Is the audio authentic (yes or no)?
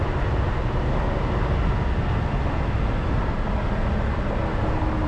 yes